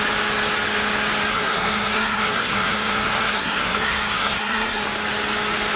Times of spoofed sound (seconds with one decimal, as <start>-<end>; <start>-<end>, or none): 1.3-4.8